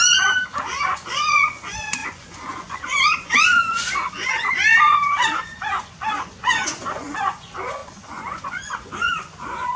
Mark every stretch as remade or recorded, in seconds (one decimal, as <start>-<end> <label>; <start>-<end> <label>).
0.0-9.8 remade